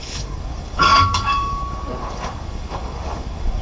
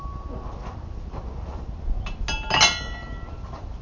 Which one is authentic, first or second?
second